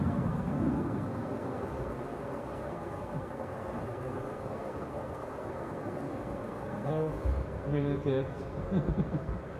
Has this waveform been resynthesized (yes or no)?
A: yes